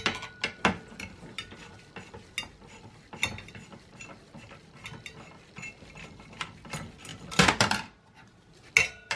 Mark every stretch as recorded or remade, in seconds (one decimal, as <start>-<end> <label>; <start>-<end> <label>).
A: 0.0-9.2 recorded